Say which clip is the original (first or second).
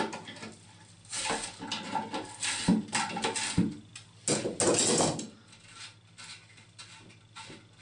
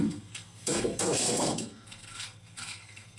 first